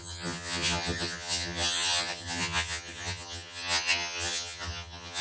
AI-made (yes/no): yes